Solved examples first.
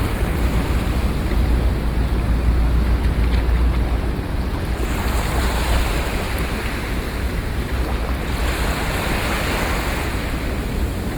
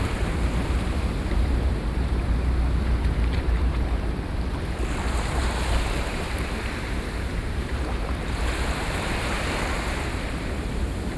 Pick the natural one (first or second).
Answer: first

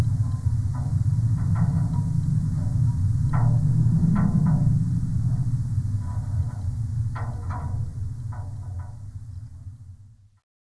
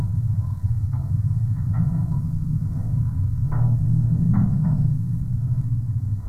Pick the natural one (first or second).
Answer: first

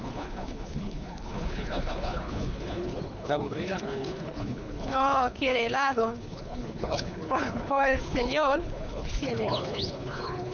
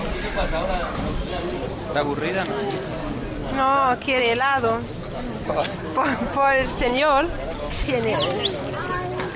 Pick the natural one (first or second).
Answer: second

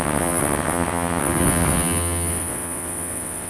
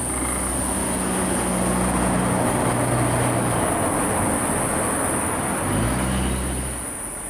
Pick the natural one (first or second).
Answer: second